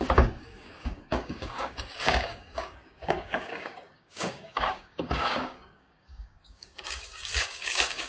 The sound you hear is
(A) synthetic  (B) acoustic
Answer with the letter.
A